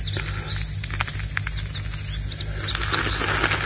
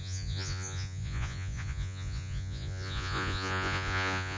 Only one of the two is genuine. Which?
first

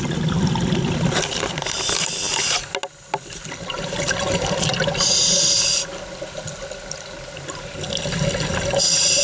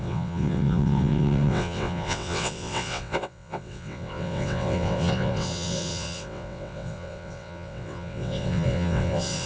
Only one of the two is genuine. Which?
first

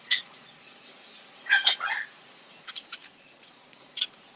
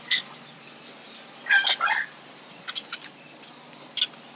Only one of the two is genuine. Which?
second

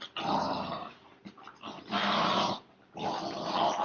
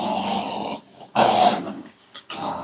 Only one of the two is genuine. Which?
first